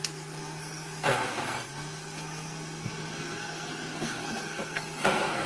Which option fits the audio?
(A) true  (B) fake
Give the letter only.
B